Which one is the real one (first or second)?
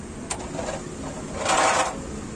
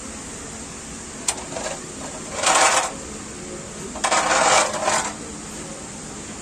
first